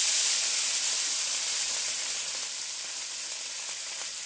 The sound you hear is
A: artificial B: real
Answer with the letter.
B